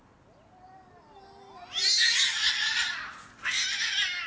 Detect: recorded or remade recorded